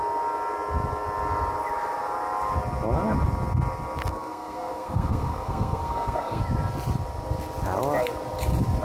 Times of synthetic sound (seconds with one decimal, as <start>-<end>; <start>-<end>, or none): 4.1-6.4